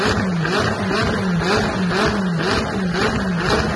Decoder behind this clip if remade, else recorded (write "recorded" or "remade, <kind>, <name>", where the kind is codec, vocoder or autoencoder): recorded